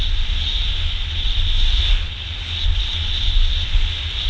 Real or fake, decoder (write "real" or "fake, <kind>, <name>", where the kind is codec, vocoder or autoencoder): real